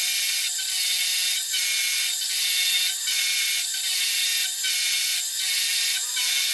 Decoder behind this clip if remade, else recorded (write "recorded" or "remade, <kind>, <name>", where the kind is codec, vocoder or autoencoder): recorded